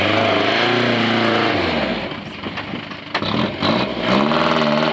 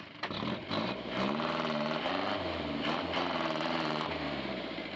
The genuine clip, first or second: first